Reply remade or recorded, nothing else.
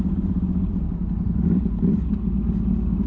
recorded